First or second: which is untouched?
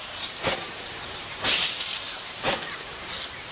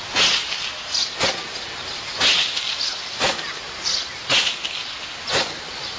second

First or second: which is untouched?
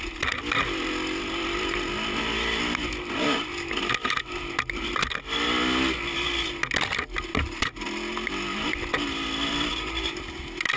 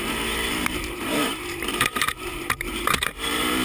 first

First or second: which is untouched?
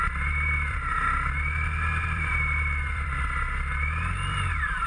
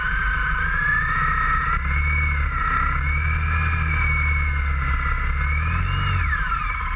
second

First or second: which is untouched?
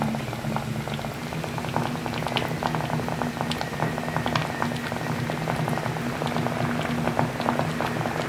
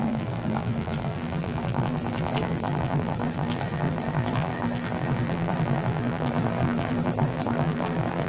first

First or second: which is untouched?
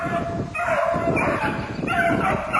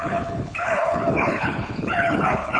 first